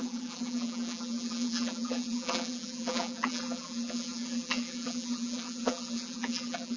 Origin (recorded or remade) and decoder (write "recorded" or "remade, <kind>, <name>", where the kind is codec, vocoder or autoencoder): remade, vocoder, BigVGAN v2